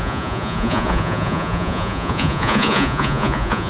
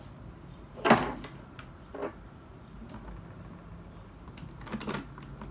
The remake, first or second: first